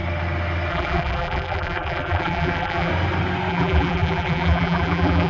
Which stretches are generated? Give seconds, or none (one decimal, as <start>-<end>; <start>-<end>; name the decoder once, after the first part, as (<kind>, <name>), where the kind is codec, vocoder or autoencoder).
0.7-2.9 (vocoder, BigVGAN v2); 3.5-5.3